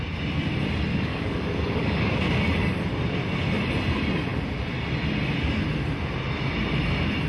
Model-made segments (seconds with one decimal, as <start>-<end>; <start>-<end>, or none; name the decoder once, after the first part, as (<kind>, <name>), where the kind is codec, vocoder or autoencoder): 0.9-2.4 (codec, DAC)